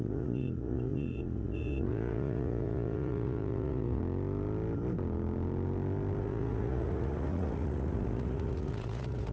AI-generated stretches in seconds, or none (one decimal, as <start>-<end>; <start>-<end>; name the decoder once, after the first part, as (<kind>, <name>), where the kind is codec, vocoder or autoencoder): 0.0-4.0 (vocoder, Vocos); 6.2-9.3